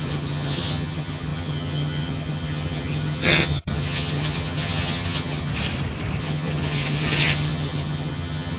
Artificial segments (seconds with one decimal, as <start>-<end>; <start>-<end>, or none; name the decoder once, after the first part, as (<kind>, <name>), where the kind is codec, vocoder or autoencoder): 0.0-5.5 (vocoder, HiFi-GAN); 6.2-8.6